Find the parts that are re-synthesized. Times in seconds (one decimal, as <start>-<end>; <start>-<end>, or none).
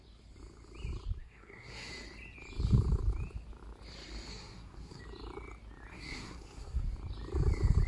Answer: 1.2-1.9; 4.3-5.0; 5.9-6.8